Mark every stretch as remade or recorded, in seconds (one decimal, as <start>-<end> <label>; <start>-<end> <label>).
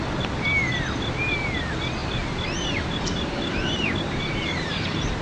0.0-2.0 recorded; 2.0-5.2 remade